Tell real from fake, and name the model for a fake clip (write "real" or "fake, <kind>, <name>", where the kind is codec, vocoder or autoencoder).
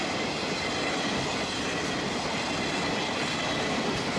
real